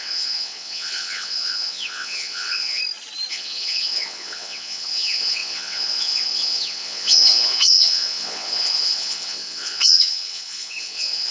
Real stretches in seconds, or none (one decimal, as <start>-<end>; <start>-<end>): 2.8-3.3